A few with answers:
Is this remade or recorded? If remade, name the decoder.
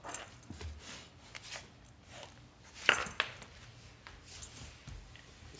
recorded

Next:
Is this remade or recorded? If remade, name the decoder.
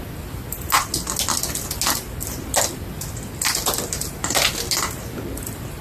recorded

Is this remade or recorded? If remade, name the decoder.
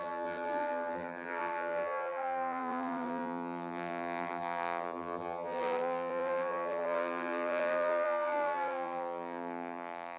remade, vocoder, BigVGAN v2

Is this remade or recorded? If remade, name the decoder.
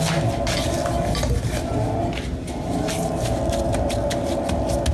recorded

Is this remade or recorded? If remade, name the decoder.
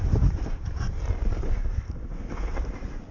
remade, vocoder, BigVGAN v2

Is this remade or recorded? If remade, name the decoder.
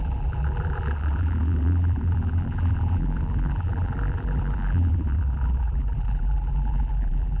remade, vocoder, BigVGAN v2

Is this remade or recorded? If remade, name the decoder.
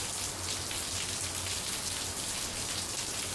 recorded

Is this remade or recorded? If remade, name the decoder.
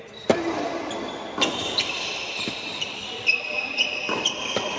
remade, vocoder, BigVGAN v2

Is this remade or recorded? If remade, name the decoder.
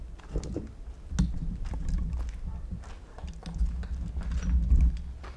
recorded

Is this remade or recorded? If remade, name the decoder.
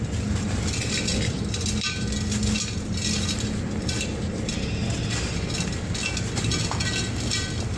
recorded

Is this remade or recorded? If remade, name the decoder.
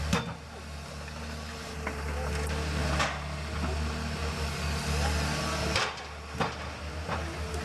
recorded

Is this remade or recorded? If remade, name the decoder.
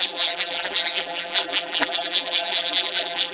remade, vocoder, BigVGAN v2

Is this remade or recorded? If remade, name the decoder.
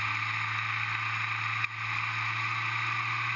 recorded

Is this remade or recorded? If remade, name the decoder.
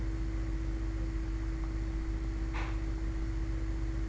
recorded